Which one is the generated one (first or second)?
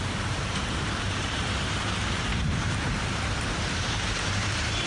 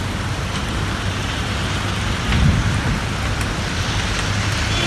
first